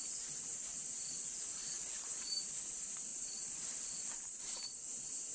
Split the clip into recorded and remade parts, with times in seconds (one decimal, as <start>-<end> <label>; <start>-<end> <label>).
0.0-5.3 remade